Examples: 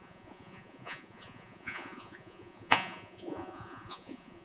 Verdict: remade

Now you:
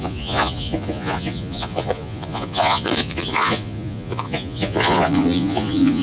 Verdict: remade